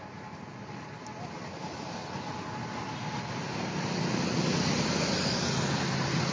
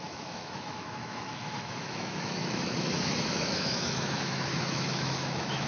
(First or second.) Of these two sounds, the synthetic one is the second